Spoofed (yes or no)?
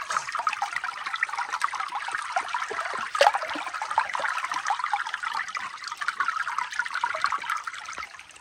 no